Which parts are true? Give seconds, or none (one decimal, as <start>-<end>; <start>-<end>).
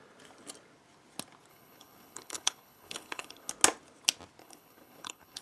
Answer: 0.0-1.5; 3.5-4.4